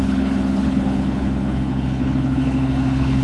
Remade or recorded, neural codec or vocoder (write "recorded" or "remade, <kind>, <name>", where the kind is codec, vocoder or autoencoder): remade, codec, HILCodec